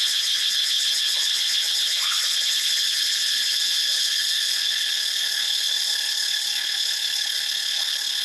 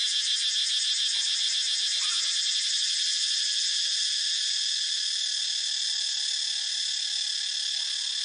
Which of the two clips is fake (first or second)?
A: first